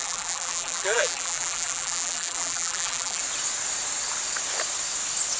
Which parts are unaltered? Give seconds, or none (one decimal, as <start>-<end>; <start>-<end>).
3.2-5.4

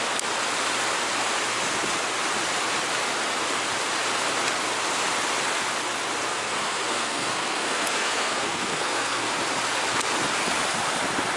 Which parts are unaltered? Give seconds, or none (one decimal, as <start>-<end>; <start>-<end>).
0.0-6.3; 9.3-11.4